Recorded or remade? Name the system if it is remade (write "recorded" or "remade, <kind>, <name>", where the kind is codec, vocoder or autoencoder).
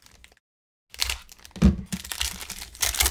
recorded